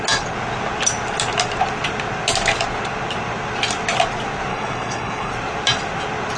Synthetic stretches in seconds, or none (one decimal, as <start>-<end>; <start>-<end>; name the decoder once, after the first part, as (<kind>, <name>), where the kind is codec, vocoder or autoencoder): 4.5-5.3 (codec, HILCodec)